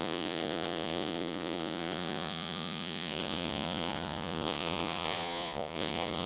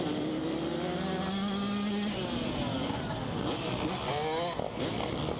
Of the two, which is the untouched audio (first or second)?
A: second